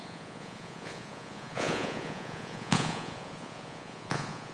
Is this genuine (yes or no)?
no